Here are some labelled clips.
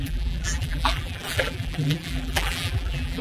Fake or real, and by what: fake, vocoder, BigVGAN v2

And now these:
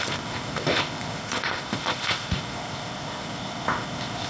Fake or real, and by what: fake, codec, ZipCodec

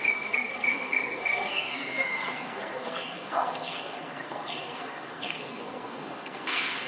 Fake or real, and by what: fake, codec, SNAC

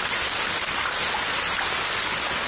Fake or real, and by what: real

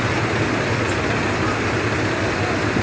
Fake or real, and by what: real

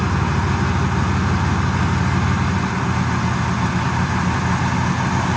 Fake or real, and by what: real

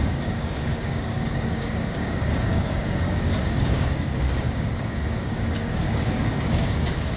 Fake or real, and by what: fake, codec, DAC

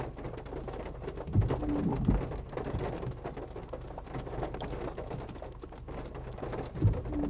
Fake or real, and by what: real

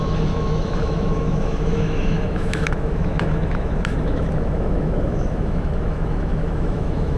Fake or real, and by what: fake, autoencoder, DAC-VAE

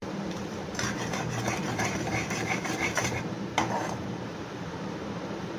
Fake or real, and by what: fake, vocoder, BigVGAN v2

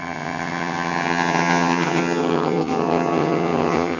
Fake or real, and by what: fake, vocoder, HiFi-GAN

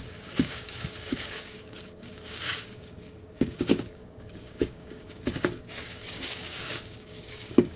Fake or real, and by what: fake, codec, DAC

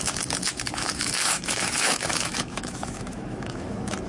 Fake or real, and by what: fake, autoencoder, DAC-VAE